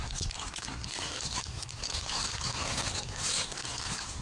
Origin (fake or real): fake